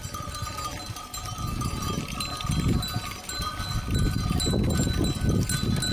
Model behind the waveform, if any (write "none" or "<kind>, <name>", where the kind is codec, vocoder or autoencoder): none